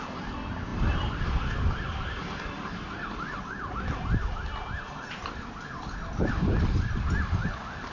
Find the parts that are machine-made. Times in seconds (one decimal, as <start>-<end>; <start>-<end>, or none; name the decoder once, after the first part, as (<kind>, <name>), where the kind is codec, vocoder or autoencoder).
0.7-3.4 (vocoder, BigVGAN v2); 5.2-6.3